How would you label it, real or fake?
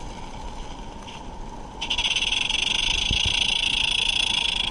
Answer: real